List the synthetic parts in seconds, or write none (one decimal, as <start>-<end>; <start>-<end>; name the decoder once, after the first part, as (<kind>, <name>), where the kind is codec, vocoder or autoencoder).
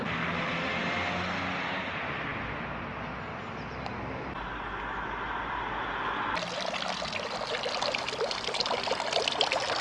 none